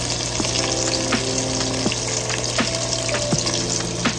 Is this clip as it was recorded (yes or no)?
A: yes